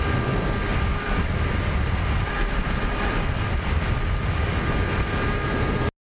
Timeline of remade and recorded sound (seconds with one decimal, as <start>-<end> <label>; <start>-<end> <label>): 0.0-0.7 recorded; 0.7-3.8 remade; 3.8-6.1 recorded